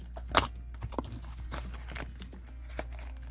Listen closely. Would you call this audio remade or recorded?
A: recorded